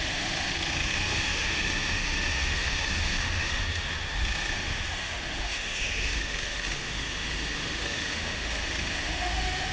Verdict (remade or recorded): remade